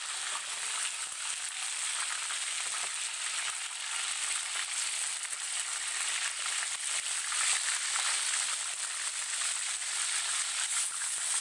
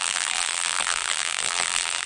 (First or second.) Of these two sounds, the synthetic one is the second